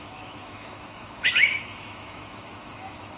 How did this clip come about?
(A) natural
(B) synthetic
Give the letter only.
B